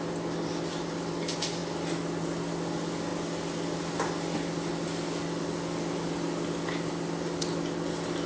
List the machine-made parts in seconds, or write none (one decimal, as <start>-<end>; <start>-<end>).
none